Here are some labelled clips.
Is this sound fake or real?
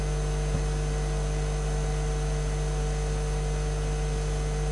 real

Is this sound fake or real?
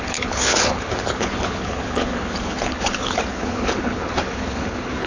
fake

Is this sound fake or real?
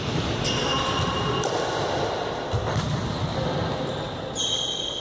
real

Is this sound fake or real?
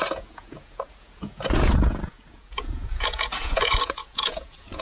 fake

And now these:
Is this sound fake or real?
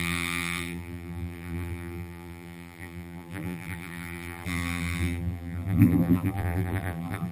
fake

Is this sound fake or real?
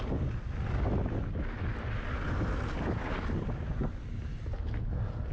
real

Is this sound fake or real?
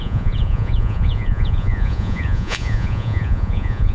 fake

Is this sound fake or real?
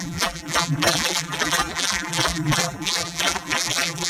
fake